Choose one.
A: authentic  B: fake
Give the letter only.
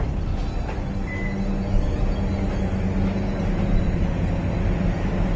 A